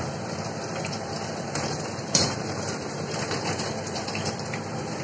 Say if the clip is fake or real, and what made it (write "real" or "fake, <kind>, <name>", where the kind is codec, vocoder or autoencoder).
fake, vocoder, BigVGAN v2